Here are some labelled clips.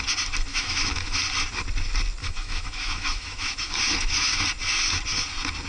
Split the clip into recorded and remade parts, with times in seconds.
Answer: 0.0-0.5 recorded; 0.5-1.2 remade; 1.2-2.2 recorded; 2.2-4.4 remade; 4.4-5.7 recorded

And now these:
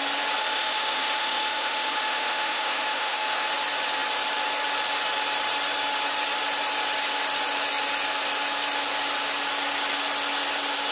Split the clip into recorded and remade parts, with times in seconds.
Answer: 0.0-0.4 recorded; 0.4-3.5 remade; 3.5-10.9 recorded

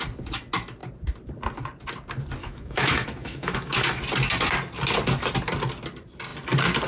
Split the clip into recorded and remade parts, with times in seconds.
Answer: 0.0-2.4 recorded; 2.4-4.0 remade; 4.0-6.9 recorded

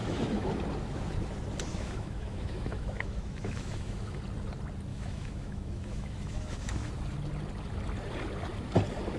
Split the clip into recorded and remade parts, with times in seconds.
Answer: 0.0-0.5 remade; 0.5-1.7 recorded; 1.7-4.2 remade; 4.2-4.9 recorded; 4.9-6.9 remade; 6.9-9.2 recorded

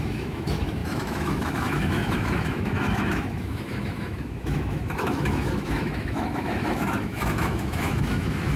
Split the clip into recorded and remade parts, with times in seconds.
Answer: 0.0-8.6 remade